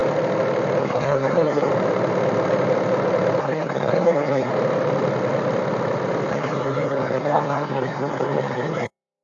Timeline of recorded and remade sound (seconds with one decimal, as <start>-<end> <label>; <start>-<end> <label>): 0.0-0.8 recorded; 0.8-1.7 remade; 1.7-3.4 recorded; 3.4-4.5 remade; 4.5-6.3 recorded; 6.3-9.2 remade